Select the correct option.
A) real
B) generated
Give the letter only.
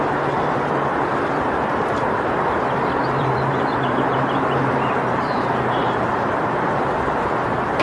B